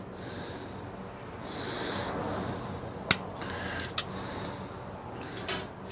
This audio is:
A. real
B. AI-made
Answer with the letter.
A